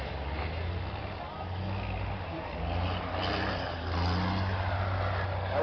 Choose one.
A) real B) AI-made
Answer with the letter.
A